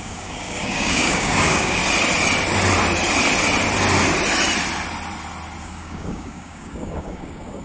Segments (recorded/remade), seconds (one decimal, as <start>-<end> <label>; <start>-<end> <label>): 0.0-1.8 remade; 1.8-5.6 recorded; 5.6-7.6 remade